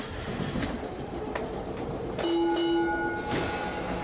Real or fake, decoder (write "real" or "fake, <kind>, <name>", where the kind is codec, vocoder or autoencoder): real